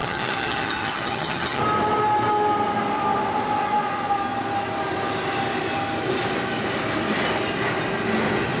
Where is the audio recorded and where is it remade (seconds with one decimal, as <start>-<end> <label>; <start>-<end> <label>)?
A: 0.0-1.6 remade; 1.6-8.6 recorded